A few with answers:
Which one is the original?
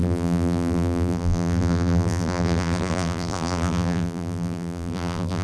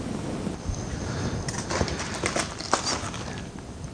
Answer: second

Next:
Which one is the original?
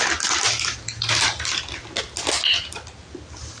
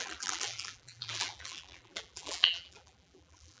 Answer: first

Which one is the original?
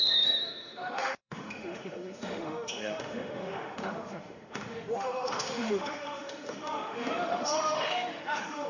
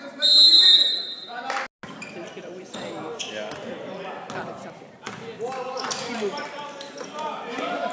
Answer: second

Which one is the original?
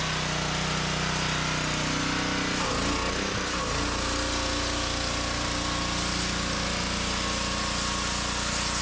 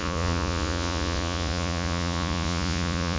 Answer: first